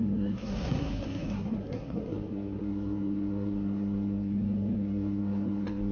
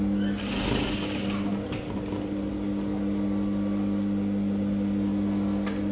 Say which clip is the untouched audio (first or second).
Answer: second